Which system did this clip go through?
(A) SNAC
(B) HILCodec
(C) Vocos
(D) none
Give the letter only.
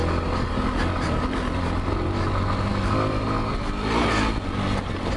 D